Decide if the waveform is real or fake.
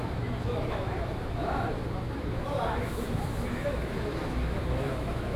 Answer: fake